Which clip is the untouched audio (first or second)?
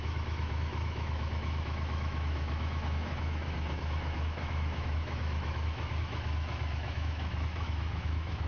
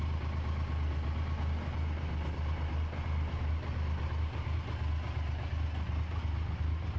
second